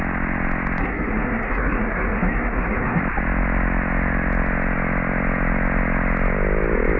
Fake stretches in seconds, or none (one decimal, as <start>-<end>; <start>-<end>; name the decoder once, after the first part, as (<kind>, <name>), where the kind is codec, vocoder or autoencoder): 0.8-3.0 (codec, SNAC)